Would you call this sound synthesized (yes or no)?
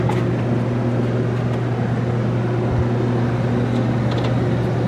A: no